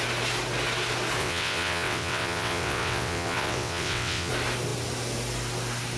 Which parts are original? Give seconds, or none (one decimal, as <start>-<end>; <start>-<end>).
0.0-1.2; 4.3-6.0